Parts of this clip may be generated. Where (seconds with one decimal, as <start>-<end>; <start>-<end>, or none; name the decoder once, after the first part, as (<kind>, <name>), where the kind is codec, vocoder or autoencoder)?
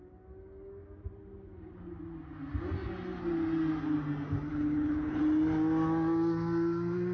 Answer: 4.5-5.2 (codec, HILCodec)